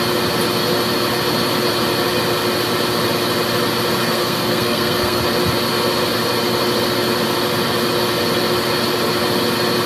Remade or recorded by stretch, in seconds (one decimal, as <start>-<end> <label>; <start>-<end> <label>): 0.0-4.0 recorded; 4.0-5.2 remade; 5.2-9.9 recorded